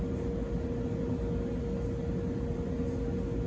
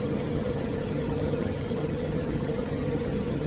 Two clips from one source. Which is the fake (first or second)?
second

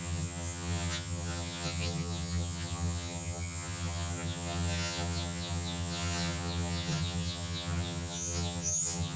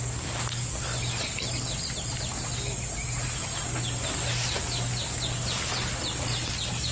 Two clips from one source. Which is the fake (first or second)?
first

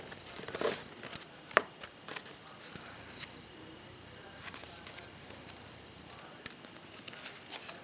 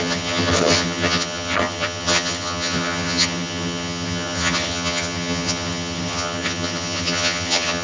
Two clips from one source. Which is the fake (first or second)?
second